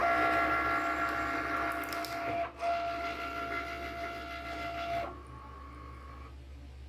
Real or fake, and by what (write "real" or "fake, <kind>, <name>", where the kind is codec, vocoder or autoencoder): real